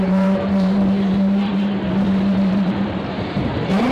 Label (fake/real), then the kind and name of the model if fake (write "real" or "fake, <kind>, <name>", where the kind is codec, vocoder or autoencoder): fake, vocoder, BigVGAN v2